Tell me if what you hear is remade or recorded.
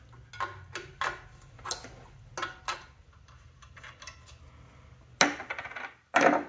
recorded